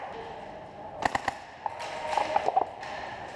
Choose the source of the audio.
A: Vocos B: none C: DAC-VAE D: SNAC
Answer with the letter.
B